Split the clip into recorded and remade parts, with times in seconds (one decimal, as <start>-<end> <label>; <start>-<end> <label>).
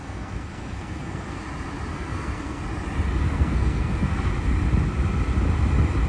0.0-1.4 remade; 1.4-1.9 recorded; 1.9-2.6 remade; 2.6-3.2 recorded; 3.2-4.3 remade; 4.3-6.1 recorded